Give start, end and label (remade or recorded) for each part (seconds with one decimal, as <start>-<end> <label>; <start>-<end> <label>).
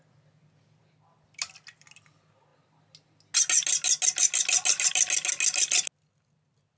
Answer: 0.0-6.8 recorded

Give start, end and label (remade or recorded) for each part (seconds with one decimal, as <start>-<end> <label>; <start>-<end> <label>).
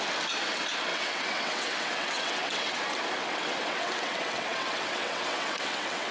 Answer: 0.0-0.9 recorded; 0.9-2.8 remade; 2.8-3.2 recorded; 3.2-6.1 remade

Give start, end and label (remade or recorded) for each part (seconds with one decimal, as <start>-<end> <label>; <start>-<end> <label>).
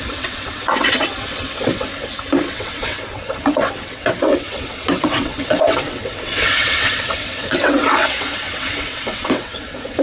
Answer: 0.0-1.9 remade; 1.9-2.5 recorded; 2.5-10.0 remade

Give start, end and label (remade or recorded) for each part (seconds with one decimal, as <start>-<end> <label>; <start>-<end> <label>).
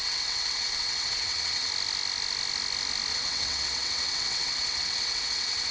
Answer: 0.0-1.7 remade; 1.7-3.1 recorded; 3.1-5.7 remade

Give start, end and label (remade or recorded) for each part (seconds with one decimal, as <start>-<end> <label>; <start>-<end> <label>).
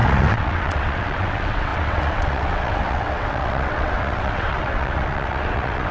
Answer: 0.0-5.9 remade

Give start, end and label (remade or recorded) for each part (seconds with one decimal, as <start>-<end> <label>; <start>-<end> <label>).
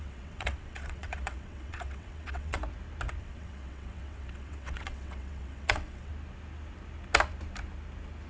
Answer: 0.0-2.6 remade; 2.6-3.2 recorded; 3.2-6.1 remade; 6.1-8.3 recorded